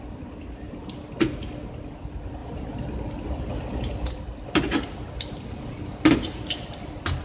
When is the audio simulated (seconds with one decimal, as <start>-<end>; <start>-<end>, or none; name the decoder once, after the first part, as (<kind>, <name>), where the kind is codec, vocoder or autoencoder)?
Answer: 2.4-4.1 (vocoder, BigVGAN v2)